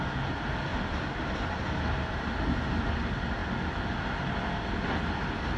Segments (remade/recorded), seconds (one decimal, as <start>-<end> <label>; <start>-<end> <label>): 0.0-5.6 recorded